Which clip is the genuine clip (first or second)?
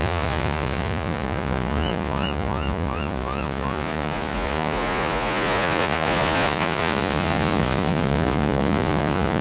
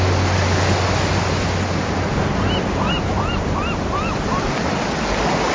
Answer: second